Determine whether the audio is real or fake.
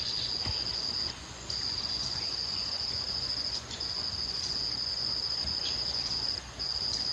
fake